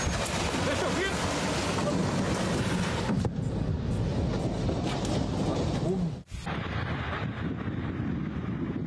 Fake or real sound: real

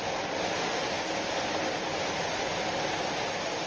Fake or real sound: real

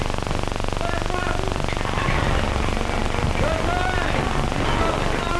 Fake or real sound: real